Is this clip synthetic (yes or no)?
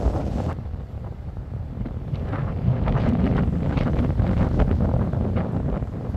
yes